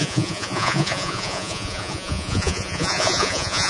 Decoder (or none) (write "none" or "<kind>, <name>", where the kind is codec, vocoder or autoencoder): vocoder, Vocos